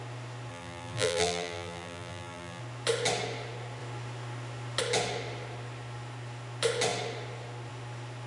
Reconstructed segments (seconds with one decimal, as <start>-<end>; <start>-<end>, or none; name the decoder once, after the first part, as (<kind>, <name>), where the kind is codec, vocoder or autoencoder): 0.5-2.6 (vocoder, BigVGAN v2)